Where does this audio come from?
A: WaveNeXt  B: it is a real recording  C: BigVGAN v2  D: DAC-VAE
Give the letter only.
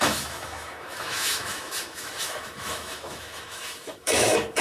D